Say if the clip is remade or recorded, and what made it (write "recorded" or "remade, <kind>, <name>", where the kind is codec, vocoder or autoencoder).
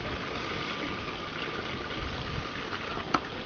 recorded